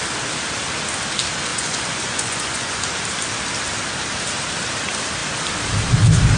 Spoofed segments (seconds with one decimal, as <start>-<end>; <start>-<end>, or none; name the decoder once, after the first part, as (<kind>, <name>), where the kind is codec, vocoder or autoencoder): 1.5-2.8 (vocoder, Vocos)